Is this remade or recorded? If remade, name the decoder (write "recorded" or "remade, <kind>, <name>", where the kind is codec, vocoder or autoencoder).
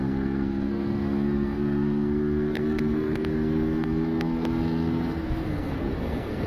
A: remade, codec, SNAC